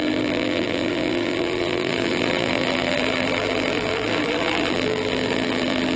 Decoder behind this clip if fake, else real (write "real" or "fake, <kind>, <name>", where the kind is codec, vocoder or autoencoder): fake, vocoder, BigVGAN v2